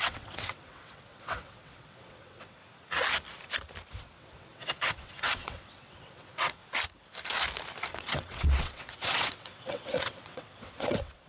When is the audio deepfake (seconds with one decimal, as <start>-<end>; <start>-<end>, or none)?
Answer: 0.0-2.6; 3.9-6.6; 7.9-11.3